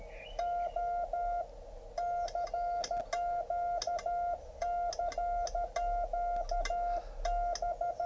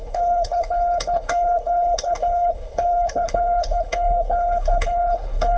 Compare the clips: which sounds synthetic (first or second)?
second